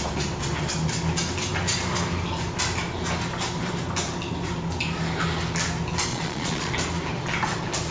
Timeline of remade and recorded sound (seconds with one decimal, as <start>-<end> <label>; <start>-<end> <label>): 0.0-6.1 recorded; 6.1-6.7 remade; 6.7-7.9 recorded